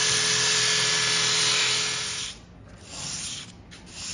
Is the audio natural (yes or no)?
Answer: yes